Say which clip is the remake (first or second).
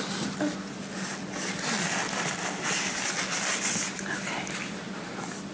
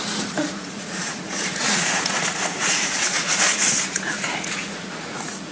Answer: second